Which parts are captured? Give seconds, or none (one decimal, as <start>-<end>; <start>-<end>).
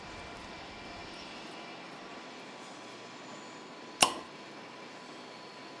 0.0-5.8